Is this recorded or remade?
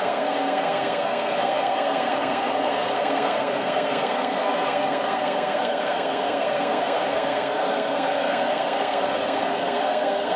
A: remade